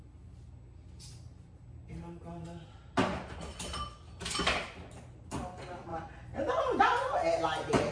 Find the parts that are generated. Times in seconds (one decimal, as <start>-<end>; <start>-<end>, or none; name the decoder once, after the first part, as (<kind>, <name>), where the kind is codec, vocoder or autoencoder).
none